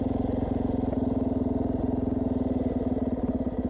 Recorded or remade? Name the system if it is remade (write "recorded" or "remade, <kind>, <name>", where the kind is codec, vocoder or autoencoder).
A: recorded